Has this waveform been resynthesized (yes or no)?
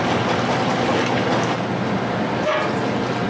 no